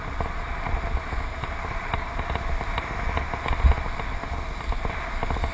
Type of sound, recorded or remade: recorded